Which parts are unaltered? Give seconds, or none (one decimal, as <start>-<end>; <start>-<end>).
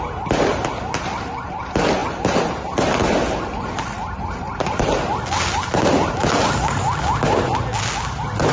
0.0-8.5